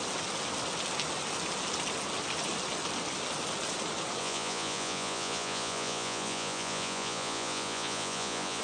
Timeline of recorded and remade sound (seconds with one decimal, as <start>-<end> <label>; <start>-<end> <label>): 0.0-4.2 recorded; 4.2-8.6 remade